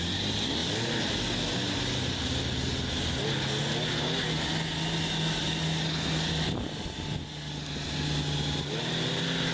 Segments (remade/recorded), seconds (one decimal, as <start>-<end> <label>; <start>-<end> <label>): 0.0-9.5 recorded